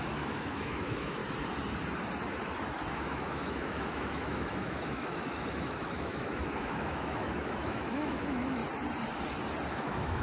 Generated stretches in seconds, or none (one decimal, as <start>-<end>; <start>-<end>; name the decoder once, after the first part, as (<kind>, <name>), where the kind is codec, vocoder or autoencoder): 0.0-1.2 (autoencoder, DAC-VAE); 2.9-8.6; 9.7-10.2